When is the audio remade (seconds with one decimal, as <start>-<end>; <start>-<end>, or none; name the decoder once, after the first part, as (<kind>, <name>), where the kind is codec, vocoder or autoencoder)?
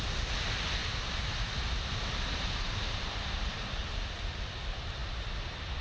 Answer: 3.8-4.5 (vocoder, BigVGAN v2)